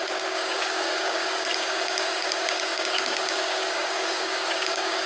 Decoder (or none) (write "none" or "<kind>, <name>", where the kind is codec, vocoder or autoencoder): codec, DAC